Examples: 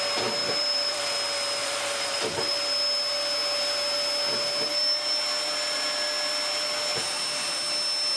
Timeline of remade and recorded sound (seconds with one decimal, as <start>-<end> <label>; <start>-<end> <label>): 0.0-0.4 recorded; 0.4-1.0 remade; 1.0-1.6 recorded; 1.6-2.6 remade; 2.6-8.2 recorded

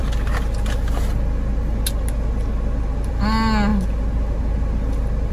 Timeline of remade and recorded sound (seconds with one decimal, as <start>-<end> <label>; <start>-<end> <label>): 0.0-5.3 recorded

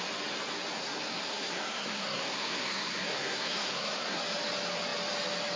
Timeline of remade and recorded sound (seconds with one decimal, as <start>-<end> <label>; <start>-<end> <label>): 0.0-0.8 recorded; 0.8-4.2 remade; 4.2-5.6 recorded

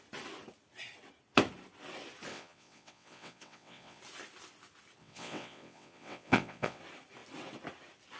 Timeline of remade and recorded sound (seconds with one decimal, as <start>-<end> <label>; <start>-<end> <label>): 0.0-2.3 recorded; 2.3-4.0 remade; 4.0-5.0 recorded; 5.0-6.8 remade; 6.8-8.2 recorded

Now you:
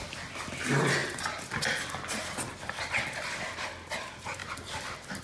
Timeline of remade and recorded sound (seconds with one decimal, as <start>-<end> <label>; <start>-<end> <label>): 0.0-5.2 recorded